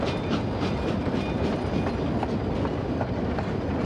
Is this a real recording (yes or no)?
yes